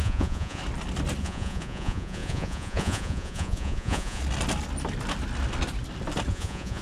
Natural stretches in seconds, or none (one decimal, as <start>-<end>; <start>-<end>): 0.6-1.2; 4.2-6.3